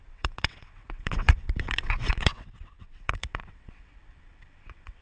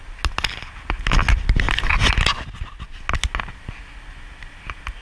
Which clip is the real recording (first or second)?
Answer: second